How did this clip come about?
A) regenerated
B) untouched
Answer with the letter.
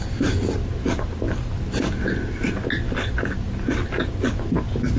B